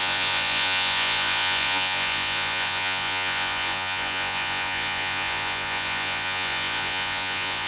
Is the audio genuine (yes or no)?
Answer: no